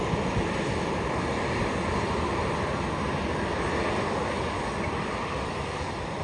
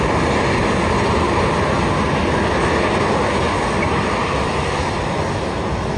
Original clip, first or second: second